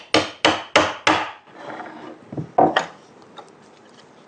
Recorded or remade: recorded